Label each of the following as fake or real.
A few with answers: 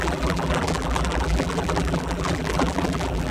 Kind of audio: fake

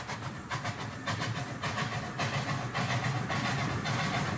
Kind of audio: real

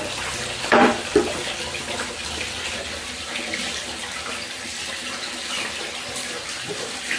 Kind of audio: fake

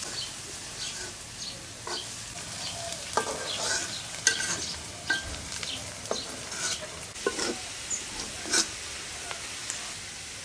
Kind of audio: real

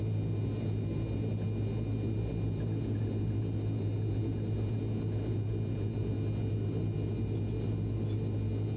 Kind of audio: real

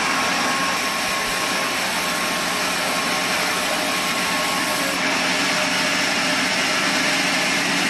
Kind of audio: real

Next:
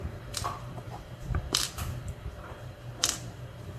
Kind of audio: fake